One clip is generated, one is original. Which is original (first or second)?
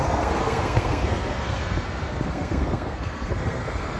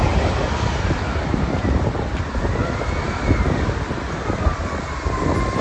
second